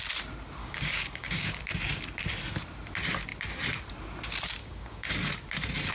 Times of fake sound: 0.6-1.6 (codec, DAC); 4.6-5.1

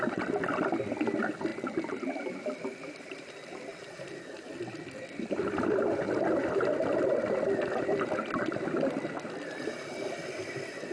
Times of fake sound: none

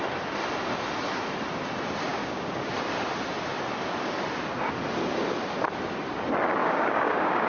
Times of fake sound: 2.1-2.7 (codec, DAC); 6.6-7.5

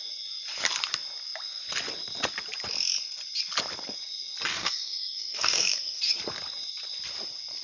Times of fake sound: 4.5-6.0 (codec, DAC)